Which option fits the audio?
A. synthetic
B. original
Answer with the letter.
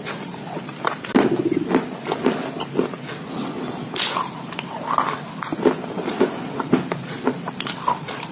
B